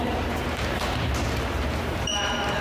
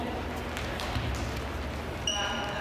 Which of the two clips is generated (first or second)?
first